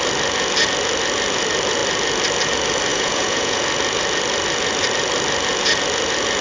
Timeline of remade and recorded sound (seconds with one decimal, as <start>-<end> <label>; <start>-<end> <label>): 0.0-2.9 recorded; 2.9-3.6 remade; 3.6-6.4 recorded